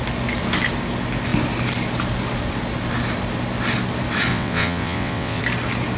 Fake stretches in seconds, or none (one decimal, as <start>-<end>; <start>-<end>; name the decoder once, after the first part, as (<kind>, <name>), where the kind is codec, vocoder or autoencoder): 4.3-5.4 (vocoder, WaveNeXt)